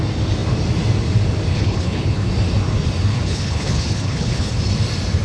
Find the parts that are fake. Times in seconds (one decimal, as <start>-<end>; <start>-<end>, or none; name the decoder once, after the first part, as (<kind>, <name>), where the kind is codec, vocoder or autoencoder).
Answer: 1.5-2.3 (codec, HILCodec); 3.1-4.5